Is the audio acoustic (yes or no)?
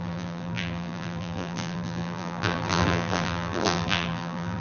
no